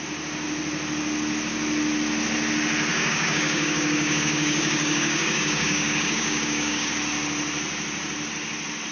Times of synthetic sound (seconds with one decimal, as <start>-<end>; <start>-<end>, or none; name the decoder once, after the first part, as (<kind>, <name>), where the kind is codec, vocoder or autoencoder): 2.9-6.9 (codec, DAC)